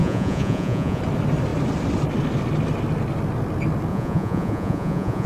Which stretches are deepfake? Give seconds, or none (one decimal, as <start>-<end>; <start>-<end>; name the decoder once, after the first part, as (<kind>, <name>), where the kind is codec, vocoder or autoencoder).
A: 0.0-1.0 (vocoder, Vocos); 3.9-5.3